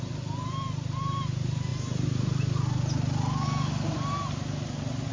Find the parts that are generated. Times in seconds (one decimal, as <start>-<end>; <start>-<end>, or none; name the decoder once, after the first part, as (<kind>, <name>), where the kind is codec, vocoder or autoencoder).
none